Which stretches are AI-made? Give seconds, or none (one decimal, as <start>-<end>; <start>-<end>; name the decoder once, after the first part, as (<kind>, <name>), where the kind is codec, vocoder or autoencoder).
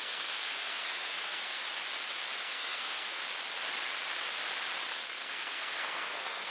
0.0-1.6 (codec, SNAC); 2.4-3.2; 4.9-6.5